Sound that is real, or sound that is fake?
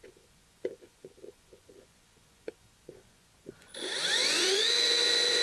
fake